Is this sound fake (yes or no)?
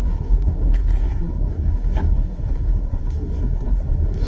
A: yes